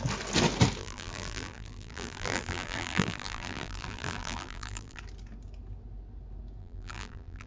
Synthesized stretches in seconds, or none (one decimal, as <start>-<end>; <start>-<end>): 0.8-5.0; 6.6-7.5